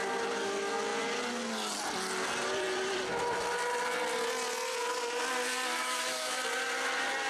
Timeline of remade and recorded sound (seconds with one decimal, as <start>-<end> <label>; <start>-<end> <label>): 0.0-5.8 recorded; 5.8-6.4 remade; 6.4-7.3 recorded